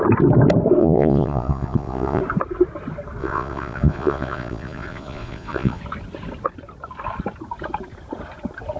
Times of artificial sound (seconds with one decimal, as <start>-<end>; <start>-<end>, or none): 0.8-2.2; 3.2-5.8